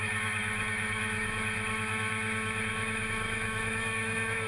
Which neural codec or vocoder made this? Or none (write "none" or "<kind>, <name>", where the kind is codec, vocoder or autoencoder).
autoencoder, DAC-VAE